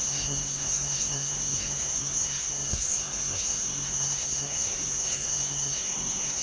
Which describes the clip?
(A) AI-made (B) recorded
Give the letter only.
A